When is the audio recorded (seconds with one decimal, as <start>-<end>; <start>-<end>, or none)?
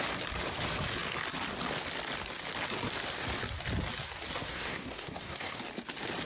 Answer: 0.0-4.5; 5.6-6.3